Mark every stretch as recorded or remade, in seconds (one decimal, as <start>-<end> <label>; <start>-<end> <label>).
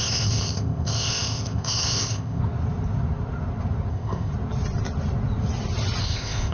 0.0-2.4 remade; 2.4-3.9 recorded; 3.9-4.3 remade; 4.3-6.0 recorded; 6.0-6.5 remade